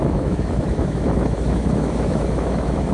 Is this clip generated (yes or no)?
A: yes